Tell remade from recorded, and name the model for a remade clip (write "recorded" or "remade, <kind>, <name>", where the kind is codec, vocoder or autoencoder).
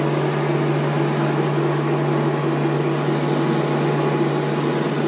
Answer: recorded